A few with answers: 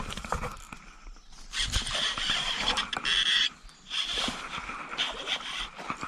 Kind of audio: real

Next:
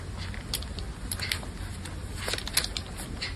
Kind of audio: real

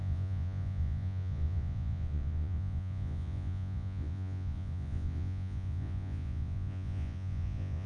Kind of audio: fake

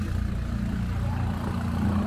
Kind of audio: real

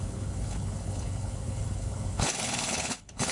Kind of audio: fake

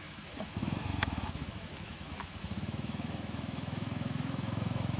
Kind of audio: fake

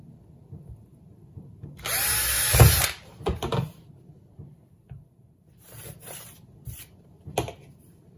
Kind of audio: real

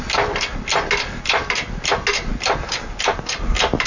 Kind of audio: real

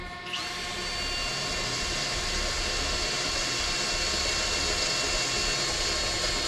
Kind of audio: real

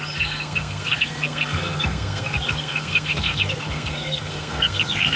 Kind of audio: fake